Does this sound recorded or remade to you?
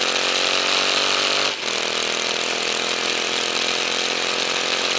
recorded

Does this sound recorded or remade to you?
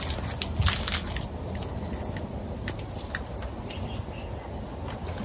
recorded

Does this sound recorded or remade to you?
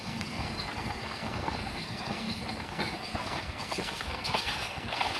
remade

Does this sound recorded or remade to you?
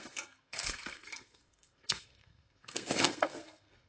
remade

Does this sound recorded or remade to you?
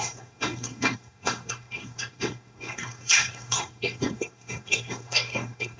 remade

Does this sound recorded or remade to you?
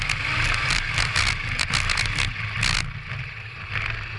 recorded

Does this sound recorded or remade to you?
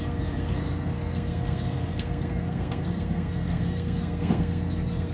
remade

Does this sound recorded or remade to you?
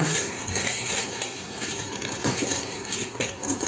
remade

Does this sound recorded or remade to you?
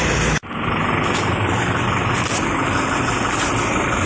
recorded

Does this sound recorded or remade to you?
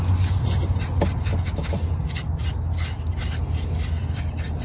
recorded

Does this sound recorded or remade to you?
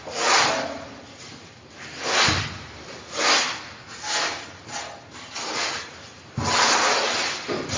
recorded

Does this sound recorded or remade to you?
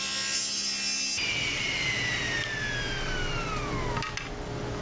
recorded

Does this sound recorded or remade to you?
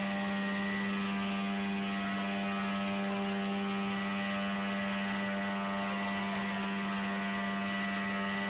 recorded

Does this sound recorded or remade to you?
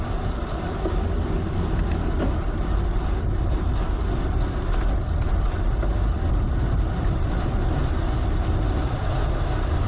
recorded